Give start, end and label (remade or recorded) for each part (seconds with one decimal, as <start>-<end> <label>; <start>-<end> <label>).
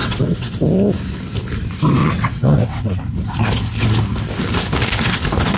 0.0-0.5 remade; 0.5-2.0 recorded; 2.0-3.0 remade; 3.0-5.6 recorded